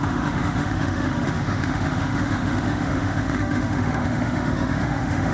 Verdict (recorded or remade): remade